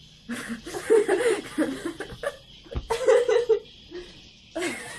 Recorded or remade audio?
recorded